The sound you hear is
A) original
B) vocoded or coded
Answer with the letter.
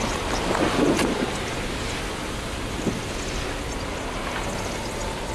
A